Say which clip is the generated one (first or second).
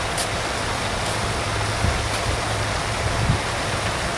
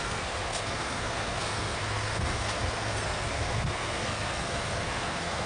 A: second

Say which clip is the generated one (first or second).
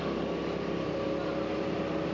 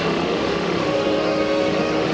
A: second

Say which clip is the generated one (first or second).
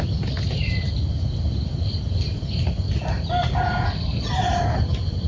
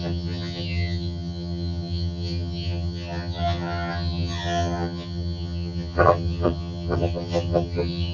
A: second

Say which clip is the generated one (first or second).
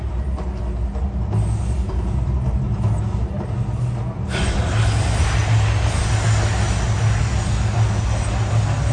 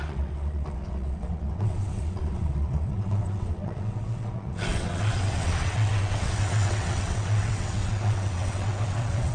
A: second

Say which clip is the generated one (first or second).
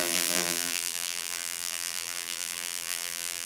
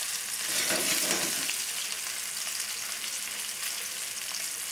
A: first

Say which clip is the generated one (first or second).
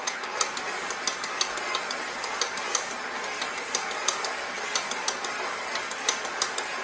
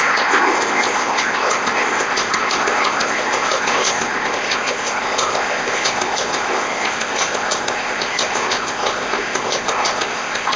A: second